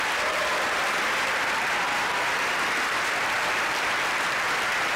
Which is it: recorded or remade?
recorded